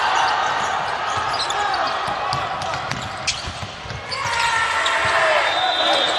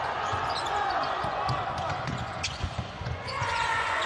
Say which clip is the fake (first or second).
second